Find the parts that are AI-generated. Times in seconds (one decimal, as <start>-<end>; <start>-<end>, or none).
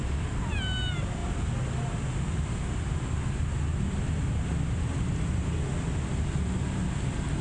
none